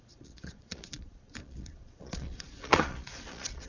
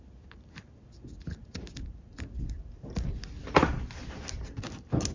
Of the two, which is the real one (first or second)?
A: second